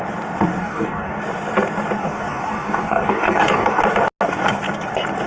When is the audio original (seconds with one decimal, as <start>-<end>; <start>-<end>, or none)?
0.0-0.6; 1.1-2.0; 3.8-5.3